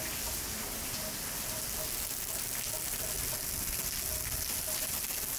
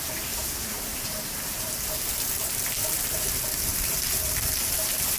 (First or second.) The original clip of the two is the first